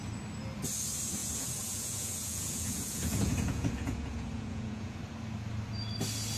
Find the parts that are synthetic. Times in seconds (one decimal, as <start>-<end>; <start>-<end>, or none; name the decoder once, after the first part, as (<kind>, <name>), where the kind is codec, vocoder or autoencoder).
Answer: 1.2-5.0 (vocoder, Vocos)